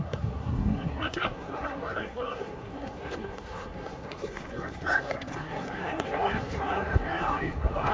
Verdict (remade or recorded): remade